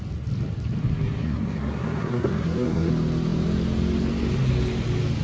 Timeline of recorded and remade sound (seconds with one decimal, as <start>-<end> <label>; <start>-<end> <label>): 0.0-0.8 recorded; 0.8-2.9 remade; 2.9-5.2 recorded